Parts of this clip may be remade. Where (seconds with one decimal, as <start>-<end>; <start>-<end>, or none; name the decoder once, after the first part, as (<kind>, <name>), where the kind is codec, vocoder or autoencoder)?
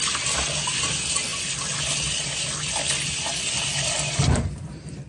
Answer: none